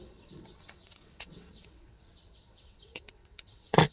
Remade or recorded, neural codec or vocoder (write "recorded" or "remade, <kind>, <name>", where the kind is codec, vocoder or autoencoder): remade, vocoder, WaveNeXt